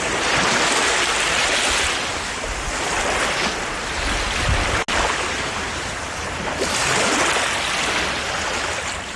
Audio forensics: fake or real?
real